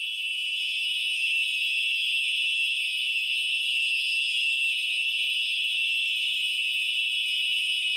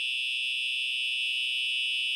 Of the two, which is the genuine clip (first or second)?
second